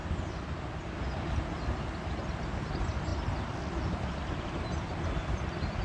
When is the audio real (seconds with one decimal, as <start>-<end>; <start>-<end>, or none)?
0.0-5.8